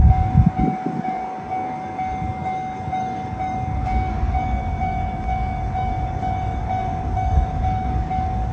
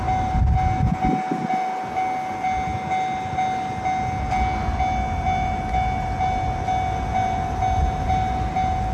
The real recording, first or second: second